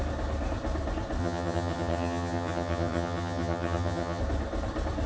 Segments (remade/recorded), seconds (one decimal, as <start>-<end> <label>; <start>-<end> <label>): 0.0-1.2 recorded; 1.2-4.2 remade; 4.2-5.1 recorded